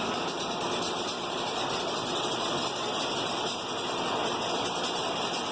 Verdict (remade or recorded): recorded